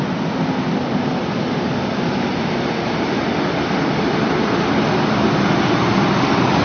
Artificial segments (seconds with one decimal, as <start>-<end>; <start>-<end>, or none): 2.3-3.1